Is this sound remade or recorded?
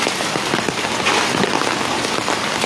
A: recorded